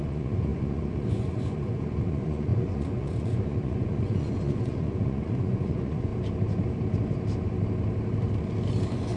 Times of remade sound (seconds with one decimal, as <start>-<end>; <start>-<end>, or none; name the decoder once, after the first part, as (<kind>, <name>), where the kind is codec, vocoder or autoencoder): 0.0-6.1 (vocoder, Vocos)